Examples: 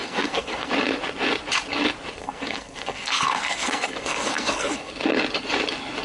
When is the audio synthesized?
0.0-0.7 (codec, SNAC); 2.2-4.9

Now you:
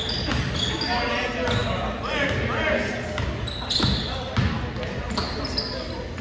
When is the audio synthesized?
none

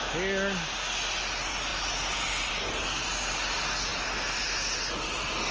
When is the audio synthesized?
none

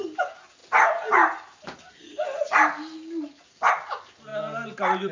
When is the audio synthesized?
none